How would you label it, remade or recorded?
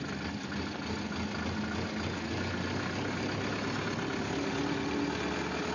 recorded